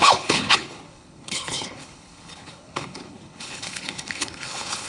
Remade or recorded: remade